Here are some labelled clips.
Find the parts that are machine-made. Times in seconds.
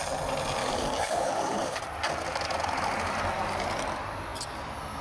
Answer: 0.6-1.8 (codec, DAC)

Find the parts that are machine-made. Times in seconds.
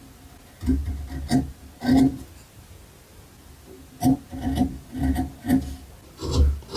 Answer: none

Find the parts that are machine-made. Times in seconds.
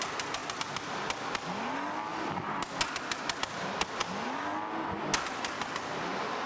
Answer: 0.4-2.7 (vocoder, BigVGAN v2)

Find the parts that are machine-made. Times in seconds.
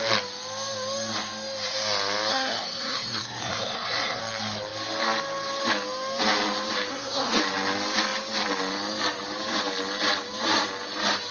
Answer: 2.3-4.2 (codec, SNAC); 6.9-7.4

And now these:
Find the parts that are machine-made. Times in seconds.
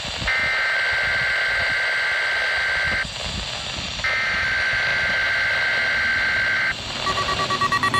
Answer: 0.0-0.4 (vocoder, BigVGAN v2); 4.1-4.9; 6.1-8.0